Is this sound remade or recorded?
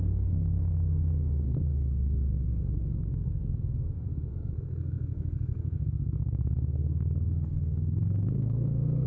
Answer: remade